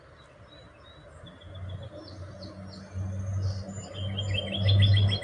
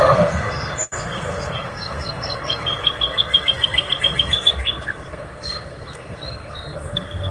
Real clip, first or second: first